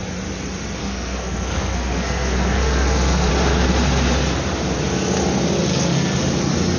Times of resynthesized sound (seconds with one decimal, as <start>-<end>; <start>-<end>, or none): 0.8-3.3; 5.7-6.2